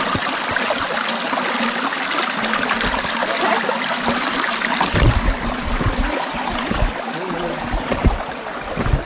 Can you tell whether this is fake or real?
real